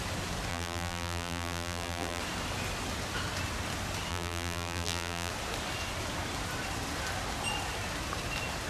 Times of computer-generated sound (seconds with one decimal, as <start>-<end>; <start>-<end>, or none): 0.5-2.2; 4.1-5.3